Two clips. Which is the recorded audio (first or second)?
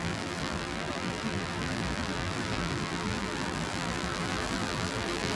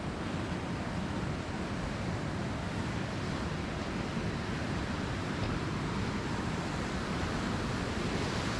second